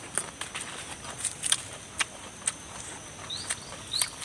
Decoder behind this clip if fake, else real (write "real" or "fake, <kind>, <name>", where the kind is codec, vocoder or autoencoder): real